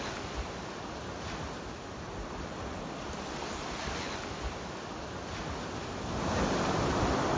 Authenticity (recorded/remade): recorded